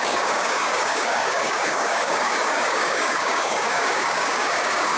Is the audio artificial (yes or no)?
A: yes